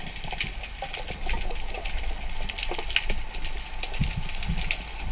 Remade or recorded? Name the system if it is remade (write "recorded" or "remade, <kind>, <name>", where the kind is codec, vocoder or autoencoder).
recorded